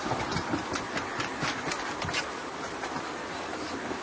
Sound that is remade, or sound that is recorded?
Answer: recorded